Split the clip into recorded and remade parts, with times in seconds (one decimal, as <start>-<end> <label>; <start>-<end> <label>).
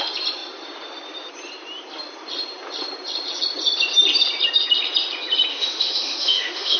0.0-5.5 recorded; 5.5-6.8 remade